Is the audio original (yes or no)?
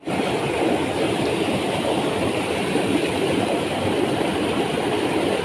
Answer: yes